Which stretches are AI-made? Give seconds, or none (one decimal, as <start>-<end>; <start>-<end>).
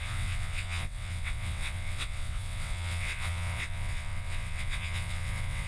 0.0-5.7